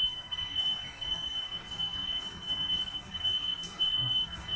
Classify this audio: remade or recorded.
remade